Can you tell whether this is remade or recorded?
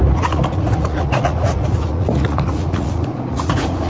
remade